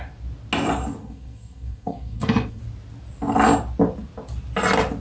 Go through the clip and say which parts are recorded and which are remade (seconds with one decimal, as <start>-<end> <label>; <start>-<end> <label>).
0.0-1.0 recorded; 1.0-2.6 remade; 2.6-5.0 recorded